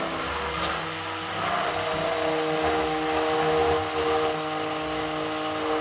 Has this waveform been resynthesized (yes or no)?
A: no